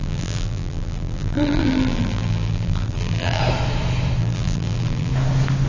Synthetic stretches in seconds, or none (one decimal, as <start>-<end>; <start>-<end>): 0.0-3.4; 4.2-5.1